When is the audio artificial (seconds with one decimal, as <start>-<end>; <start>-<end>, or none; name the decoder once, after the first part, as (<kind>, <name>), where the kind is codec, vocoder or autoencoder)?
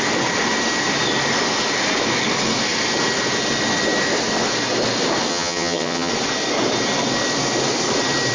5.3-6.1 (vocoder, HiFi-GAN)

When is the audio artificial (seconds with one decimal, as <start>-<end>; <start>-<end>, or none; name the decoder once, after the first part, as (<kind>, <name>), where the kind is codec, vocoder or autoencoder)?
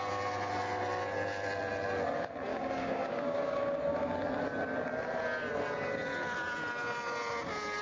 2.5-3.8 (codec, DAC)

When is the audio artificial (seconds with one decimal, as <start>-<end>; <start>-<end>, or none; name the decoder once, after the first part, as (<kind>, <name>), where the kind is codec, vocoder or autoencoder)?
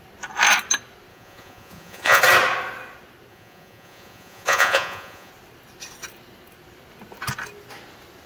1.1-2.2 (vocoder, Vocos); 3.3-5.3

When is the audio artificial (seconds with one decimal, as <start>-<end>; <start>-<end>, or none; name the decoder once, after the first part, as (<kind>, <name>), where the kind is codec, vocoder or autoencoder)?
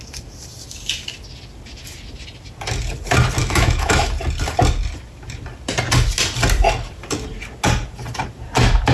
3.4-4.1 (autoencoder, DAC-VAE)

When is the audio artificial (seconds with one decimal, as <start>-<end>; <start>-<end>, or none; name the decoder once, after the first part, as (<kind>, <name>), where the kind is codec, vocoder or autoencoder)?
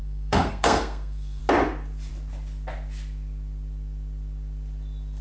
0.0-1.4 (codec, SNAC)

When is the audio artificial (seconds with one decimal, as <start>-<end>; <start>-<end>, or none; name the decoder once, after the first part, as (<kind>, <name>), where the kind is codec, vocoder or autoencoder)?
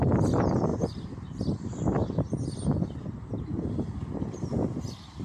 none